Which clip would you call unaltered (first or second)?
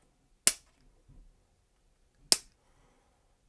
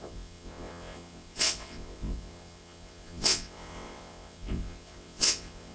first